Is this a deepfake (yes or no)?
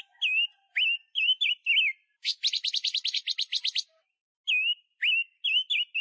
no